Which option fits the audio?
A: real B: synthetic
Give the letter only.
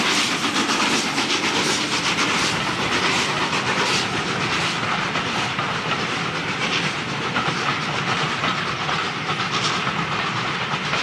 A